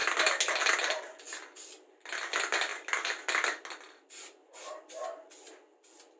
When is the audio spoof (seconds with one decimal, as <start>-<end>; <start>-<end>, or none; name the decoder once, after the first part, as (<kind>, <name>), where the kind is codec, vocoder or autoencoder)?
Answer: none